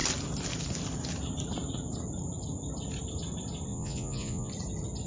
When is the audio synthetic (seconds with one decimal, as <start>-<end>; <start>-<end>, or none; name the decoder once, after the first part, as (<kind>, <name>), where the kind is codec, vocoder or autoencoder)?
3.7-4.5 (vocoder, Vocos)